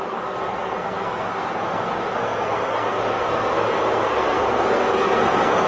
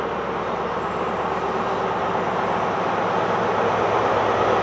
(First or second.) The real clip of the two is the second